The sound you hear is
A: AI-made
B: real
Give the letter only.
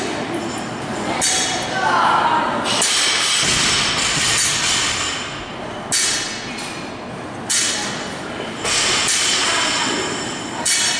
B